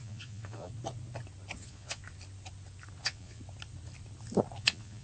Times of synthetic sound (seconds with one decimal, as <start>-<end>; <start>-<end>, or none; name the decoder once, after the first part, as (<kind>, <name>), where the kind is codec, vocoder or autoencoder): 0.0-0.7 (vocoder, Vocos); 1.6-2.0; 3.0-3.4; 4.6-5.0